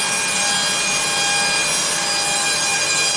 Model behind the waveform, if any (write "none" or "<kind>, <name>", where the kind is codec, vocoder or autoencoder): none